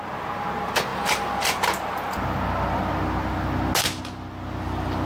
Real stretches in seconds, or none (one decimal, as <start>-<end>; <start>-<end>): 0.0-5.1